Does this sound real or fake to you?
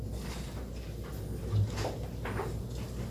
real